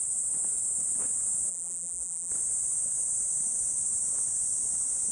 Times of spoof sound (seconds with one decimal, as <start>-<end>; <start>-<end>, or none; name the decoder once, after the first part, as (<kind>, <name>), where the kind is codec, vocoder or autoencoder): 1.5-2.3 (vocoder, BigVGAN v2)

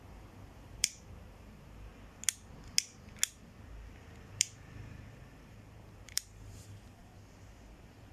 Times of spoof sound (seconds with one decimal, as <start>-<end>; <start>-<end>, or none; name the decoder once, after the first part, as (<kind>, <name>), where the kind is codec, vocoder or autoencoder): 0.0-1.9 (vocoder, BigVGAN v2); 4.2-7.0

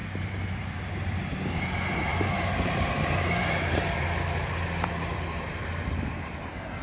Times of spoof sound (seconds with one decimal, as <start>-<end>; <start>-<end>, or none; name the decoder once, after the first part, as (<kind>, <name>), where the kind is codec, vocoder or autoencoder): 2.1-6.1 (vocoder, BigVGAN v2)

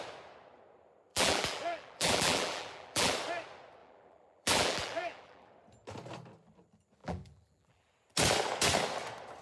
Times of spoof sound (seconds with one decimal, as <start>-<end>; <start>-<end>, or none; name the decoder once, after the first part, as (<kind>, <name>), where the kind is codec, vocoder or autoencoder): 1.1-3.1 (vocoder, BigVGAN v2); 3.8-5.5; 7.0-7.9

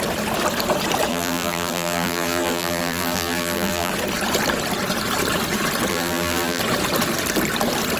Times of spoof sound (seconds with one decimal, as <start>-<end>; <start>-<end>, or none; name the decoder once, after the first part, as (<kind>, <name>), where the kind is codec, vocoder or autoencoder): 1.1-3.9 (vocoder, BigVGAN v2); 5.9-6.6

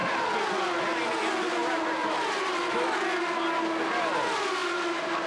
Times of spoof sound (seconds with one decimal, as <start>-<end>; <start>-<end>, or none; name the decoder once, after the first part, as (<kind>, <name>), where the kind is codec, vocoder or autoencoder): 0.0-0.8 (vocoder, BigVGAN v2); 1.6-2.2; 4.6-5.3